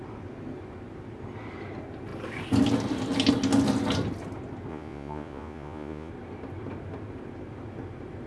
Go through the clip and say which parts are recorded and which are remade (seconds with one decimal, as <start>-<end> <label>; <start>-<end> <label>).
0.0-4.7 recorded; 4.7-6.1 remade; 6.1-8.3 recorded